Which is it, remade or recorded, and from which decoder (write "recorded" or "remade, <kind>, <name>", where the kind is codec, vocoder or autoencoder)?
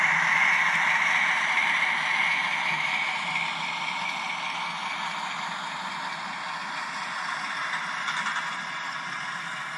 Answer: recorded